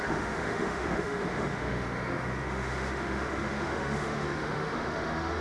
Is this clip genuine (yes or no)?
no